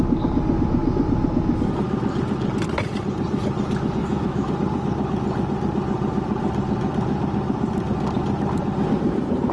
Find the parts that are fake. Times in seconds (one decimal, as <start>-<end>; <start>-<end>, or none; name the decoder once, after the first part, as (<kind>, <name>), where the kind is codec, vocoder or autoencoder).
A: 4.0-4.5 (autoencoder, DAC-VAE)